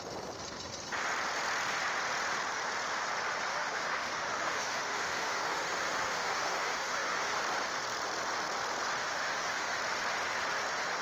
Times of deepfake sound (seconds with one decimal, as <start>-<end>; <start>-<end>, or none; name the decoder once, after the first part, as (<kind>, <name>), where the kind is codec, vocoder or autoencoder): 3.5-7.4 (autoencoder, DAC-VAE); 9.0-9.8